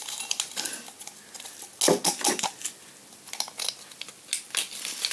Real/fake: real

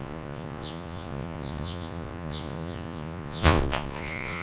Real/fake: fake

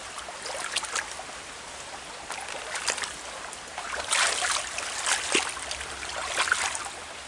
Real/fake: real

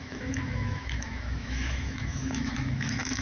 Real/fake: fake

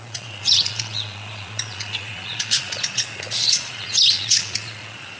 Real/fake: fake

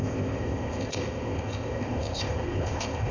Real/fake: fake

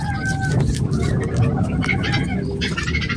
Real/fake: real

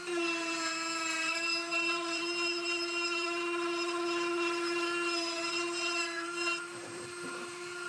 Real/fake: fake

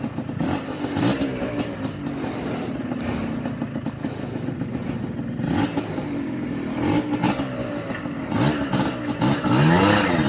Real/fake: real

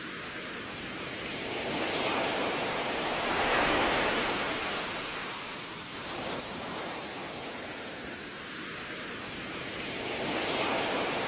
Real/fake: real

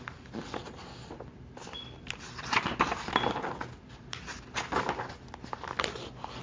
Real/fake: real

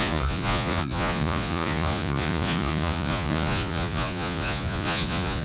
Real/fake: fake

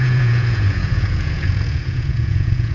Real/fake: fake